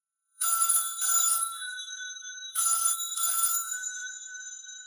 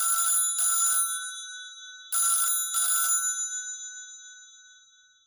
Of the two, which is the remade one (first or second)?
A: first